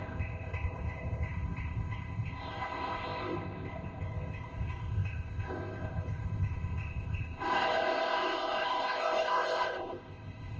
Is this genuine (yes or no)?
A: no